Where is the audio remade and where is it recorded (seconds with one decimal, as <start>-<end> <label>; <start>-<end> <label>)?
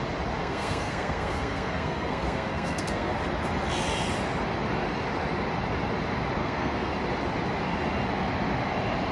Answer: 0.0-0.4 recorded; 0.4-3.1 remade; 3.1-6.4 recorded; 6.4-6.9 remade; 6.9-9.1 recorded